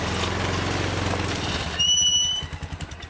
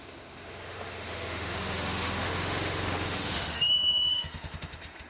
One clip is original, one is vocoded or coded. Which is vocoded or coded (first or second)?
second